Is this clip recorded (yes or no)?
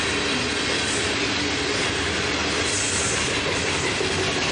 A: yes